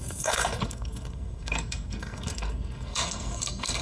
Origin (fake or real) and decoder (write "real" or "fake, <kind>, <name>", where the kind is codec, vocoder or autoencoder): fake, codec, SNAC